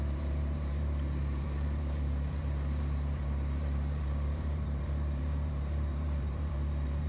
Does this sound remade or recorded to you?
remade